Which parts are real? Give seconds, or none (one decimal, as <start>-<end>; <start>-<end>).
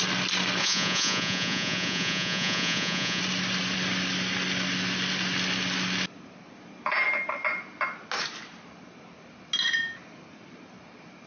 0.0-0.6; 3.2-11.3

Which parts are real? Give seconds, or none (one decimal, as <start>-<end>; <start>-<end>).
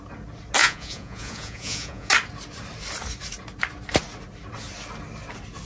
0.0-0.6; 2.1-5.7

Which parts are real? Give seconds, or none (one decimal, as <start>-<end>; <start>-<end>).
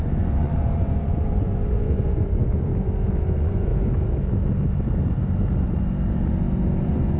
2.7-3.3; 3.7-6.8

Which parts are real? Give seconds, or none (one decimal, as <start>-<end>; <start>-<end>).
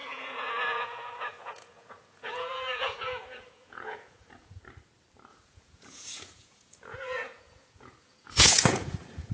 4.6-5.3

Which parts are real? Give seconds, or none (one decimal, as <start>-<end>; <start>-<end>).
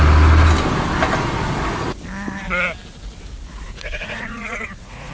0.0-3.5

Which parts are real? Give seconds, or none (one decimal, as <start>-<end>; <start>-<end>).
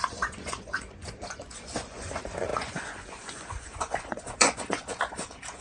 none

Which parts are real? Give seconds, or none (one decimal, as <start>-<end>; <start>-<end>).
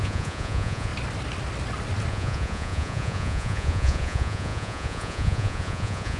0.9-2.1